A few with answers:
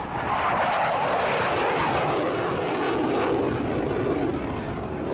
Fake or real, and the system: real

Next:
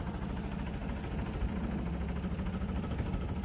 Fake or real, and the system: real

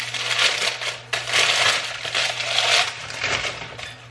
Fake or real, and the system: real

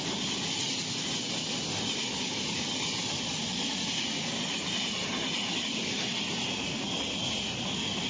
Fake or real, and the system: real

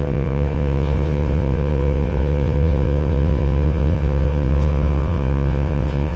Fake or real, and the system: fake, vocoder, WaveNeXt